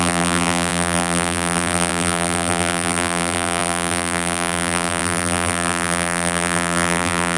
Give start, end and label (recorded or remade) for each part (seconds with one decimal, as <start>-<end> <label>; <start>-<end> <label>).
0.0-7.4 remade

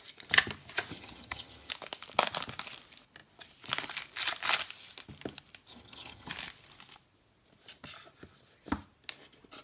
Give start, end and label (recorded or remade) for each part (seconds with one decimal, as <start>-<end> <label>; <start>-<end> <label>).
0.0-0.9 recorded; 0.9-1.7 remade; 1.7-5.7 recorded; 5.7-6.3 remade; 6.3-9.6 recorded

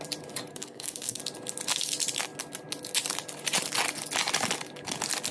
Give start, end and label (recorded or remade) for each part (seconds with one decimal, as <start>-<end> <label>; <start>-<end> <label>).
0.0-0.5 recorded; 0.5-1.2 remade; 1.2-5.3 recorded

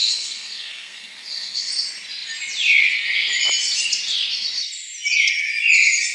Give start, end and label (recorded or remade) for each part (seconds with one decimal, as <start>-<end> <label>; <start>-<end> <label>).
0.0-1.7 remade; 1.7-6.1 recorded

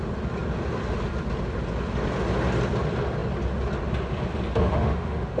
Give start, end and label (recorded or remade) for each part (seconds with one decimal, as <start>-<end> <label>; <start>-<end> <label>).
0.0-4.5 recorded; 4.5-5.4 remade